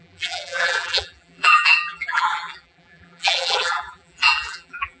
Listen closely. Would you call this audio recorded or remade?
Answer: remade